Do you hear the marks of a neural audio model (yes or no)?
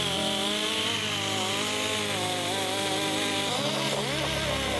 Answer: no